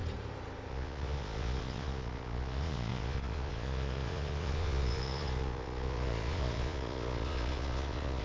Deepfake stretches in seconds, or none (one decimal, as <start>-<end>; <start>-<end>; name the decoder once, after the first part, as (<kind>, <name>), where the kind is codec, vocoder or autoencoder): 0.7-8.2 (vocoder, Vocos)